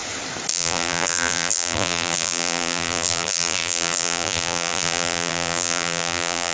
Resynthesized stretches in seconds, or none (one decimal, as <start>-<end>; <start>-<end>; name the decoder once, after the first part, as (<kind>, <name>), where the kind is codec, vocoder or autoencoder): 0.5-6.5 (vocoder, BigVGAN v2)